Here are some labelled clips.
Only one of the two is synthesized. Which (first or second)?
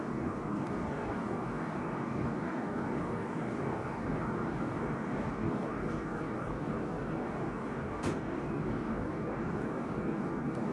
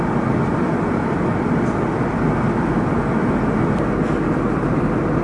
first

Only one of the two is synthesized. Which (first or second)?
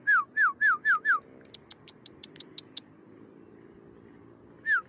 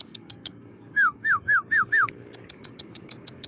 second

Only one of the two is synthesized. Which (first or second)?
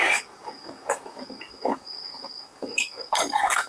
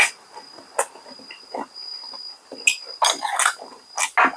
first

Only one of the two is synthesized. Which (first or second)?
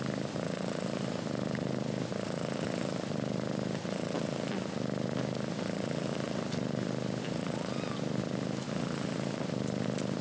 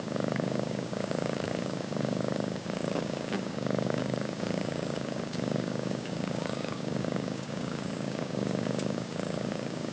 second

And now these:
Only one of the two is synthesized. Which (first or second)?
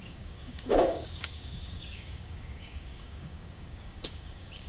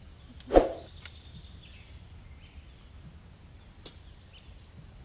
first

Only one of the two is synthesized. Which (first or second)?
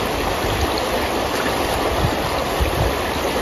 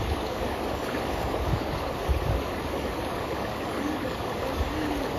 second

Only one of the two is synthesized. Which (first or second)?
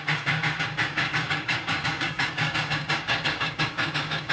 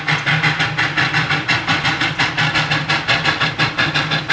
first